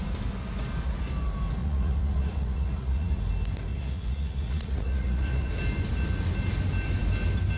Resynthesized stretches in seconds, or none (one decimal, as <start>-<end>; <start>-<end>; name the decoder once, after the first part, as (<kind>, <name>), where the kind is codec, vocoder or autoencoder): 1.6-3.2 (vocoder, Vocos); 3.7-5.5